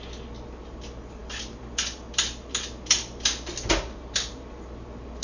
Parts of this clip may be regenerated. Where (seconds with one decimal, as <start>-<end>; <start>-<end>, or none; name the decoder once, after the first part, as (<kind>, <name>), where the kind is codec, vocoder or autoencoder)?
none